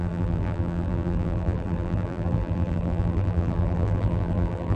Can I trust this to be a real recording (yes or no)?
no